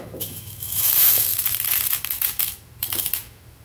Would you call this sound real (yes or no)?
no